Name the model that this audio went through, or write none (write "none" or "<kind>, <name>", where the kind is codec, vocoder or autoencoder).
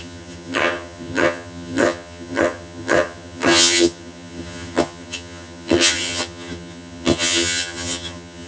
vocoder, HiFi-GAN